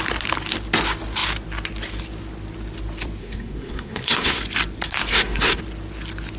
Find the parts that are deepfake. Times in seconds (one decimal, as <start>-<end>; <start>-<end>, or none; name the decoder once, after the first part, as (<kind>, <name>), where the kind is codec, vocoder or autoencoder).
3.2-4.4 (codec, SNAC); 5.1-5.6